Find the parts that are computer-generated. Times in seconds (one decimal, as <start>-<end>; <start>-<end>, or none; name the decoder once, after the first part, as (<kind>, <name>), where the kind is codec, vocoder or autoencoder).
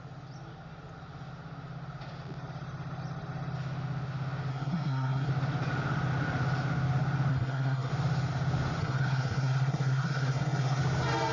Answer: 4.5-5.3 (codec, SNAC); 7.3-7.9; 8.8-10.8